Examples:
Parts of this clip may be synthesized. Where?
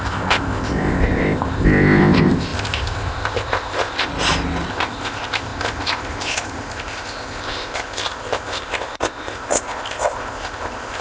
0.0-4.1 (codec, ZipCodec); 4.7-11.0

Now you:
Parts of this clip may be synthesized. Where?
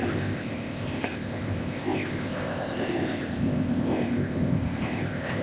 0.0-5.4 (codec, ZipCodec)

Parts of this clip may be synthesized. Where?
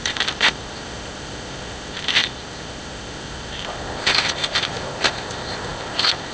0.0-6.3 (codec, ZipCodec)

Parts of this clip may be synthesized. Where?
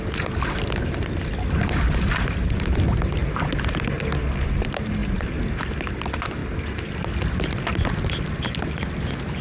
none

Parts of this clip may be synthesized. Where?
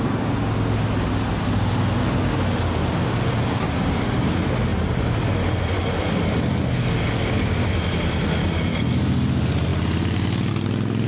none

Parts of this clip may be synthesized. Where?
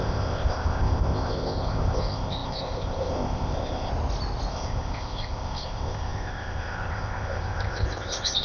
0.0-3.9 (codec, ZipCodec); 4.5-8.4